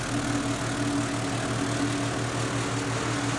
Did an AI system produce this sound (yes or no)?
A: no